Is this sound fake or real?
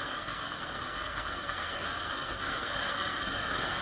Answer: fake